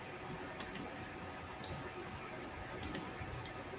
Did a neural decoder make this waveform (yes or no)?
no